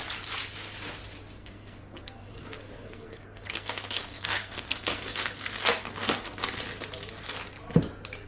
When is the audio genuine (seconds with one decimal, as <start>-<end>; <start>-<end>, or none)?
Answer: 0.0-1.4; 6.4-8.3